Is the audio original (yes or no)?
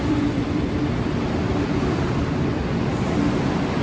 no